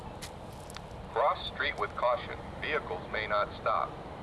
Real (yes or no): yes